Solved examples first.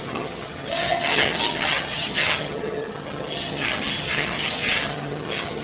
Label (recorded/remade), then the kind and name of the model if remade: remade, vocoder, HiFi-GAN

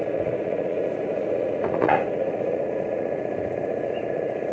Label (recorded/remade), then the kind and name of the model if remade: remade, vocoder, Vocos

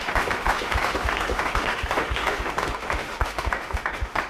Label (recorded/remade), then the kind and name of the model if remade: remade, autoencoder, DAC-VAE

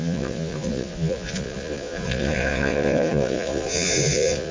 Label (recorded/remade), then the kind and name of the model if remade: remade, vocoder, Vocos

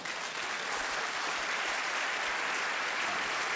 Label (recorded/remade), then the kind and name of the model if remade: recorded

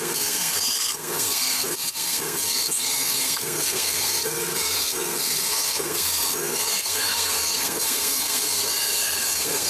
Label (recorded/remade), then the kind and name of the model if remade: remade, codec, SNAC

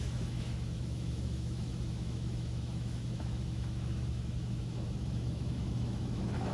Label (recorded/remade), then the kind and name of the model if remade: remade, autoencoder, DAC-VAE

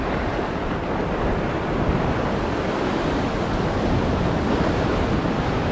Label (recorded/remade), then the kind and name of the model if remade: recorded